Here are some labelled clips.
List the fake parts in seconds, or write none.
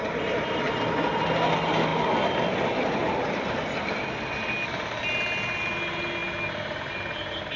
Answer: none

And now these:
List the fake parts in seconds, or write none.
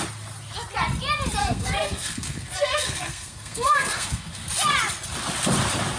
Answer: 1.4-4.5 (codec, SNAC)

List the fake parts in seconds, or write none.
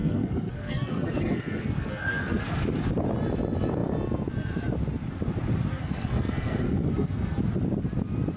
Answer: 0.0-2.4 (codec, SNAC); 5.7-7.4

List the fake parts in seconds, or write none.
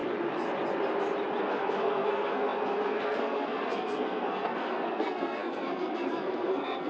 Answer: 1.4-6.9 (codec, SNAC)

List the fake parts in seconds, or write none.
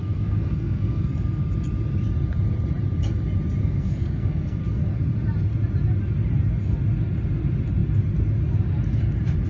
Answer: 0.0-1.4 (codec, SNAC); 3.6-4.8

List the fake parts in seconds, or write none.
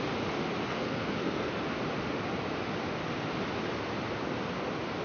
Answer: 0.7-1.5 (codec, SNAC)